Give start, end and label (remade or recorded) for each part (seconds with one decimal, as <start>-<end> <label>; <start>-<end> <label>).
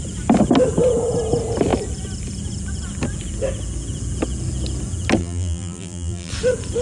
0.0-5.2 recorded; 5.2-6.3 remade; 6.3-6.8 recorded